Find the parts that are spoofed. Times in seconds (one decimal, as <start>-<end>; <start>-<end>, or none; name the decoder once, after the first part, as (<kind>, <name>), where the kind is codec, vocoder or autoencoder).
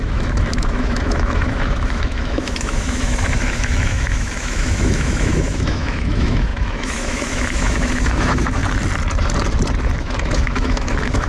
0.0-8.6 (autoencoder, DAC-VAE); 10.0-11.3